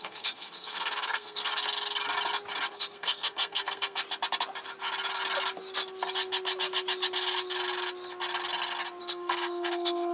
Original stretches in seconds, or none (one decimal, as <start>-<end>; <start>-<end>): 1.5-2.7; 4.0-9.0